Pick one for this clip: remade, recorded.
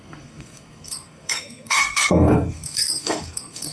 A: remade